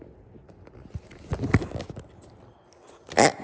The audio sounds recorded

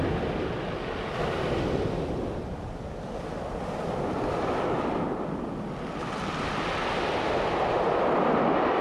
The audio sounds recorded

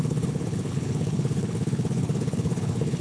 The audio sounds remade